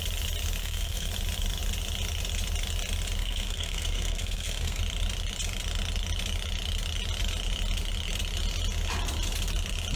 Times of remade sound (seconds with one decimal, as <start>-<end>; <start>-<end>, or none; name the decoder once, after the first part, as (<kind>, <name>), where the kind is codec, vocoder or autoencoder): 0.6-1.1 (codec, SNAC); 3.2-4.8